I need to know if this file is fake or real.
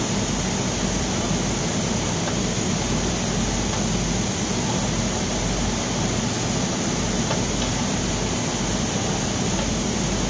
real